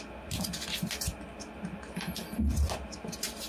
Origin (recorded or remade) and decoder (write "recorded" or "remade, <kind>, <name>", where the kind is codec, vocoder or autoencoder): recorded